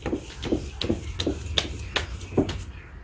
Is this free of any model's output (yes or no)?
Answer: yes